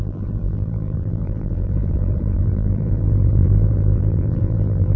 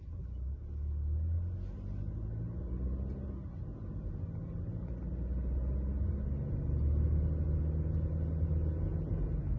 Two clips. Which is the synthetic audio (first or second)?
first